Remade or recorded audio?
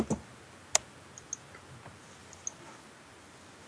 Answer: recorded